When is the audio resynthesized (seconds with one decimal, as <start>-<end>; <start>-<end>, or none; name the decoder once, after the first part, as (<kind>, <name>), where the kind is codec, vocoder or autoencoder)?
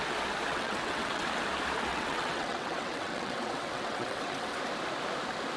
0.5-1.3 (vocoder, WaveNeXt); 1.9-4.6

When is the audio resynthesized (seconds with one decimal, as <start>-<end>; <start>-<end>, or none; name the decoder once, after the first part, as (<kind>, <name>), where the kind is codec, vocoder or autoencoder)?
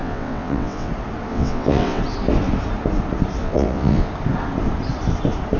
0.0-0.9 (vocoder, WaveNeXt); 1.3-2.0; 3.4-4.1